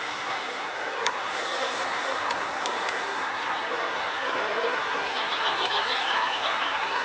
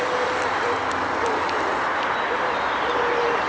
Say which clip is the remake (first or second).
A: first